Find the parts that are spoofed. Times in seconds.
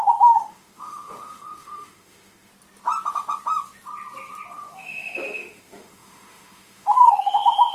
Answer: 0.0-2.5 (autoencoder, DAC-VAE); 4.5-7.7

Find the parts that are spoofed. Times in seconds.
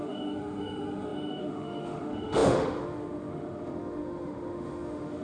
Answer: 0.0-5.2 (autoencoder, DAC-VAE)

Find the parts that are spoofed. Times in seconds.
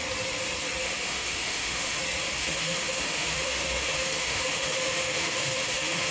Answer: 0.8-2.0 (autoencoder, DAC-VAE); 2.4-6.1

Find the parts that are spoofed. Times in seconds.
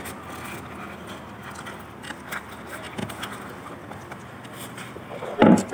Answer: none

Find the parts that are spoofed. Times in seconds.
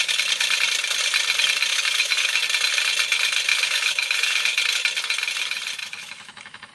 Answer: 1.7-2.4 (autoencoder, DAC-VAE); 3.5-4.4; 5.8-6.7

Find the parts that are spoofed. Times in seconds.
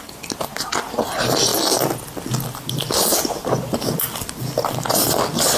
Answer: none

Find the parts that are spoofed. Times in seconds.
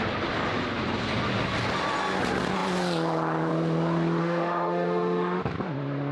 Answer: 4.2-5.4 (autoencoder, DAC-VAE)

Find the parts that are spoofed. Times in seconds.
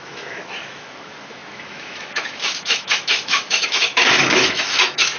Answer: 0.0-5.2 (autoencoder, DAC-VAE)